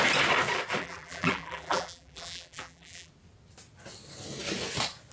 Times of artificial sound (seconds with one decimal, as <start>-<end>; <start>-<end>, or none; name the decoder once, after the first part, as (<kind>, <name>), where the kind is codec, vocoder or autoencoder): 0.8-3.1 (vocoder, BigVGAN v2)